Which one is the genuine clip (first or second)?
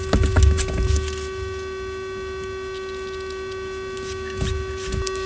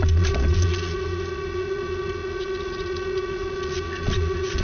first